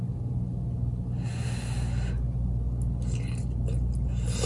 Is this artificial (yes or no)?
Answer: no